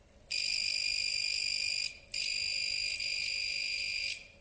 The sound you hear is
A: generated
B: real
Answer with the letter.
B